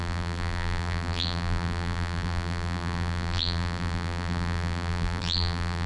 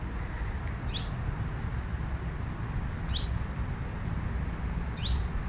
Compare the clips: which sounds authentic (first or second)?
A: second